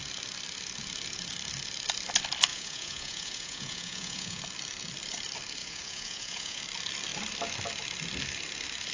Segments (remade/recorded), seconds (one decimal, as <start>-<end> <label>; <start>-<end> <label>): 0.0-2.5 recorded; 2.5-4.4 remade; 4.4-5.6 recorded; 5.6-6.6 remade; 6.6-8.9 recorded